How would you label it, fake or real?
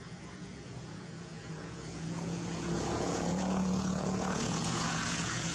fake